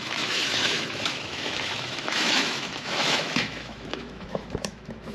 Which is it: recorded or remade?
remade